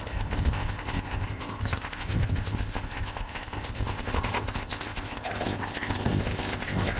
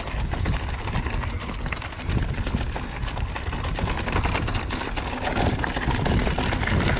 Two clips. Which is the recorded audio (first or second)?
second